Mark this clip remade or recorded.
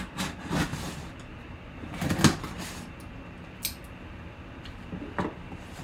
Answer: recorded